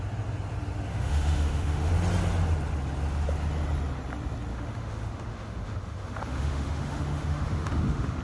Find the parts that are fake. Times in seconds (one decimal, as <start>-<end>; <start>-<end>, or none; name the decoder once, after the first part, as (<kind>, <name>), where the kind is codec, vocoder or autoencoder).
0.9-1.9 (autoencoder, DAC-VAE); 4.5-8.2